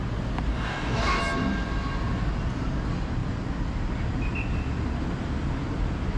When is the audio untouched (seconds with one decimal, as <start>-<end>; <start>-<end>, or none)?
0.0-0.5; 1.2-6.2